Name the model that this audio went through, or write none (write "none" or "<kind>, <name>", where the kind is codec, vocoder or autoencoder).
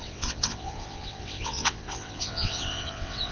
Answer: vocoder, WaveNeXt